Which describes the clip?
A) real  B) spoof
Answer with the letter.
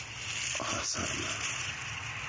A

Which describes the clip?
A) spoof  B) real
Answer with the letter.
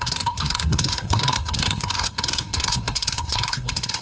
A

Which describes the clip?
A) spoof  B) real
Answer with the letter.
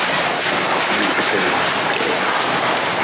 B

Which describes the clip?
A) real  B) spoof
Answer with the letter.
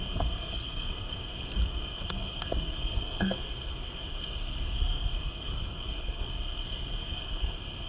B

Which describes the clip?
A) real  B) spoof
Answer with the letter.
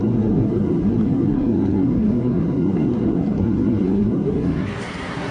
B